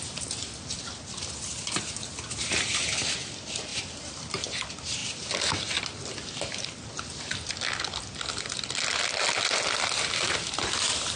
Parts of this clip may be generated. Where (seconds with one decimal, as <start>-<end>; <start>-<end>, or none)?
3.7-4.3